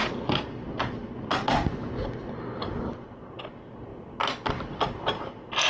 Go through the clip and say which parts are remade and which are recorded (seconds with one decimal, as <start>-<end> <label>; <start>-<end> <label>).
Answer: 0.0-5.7 recorded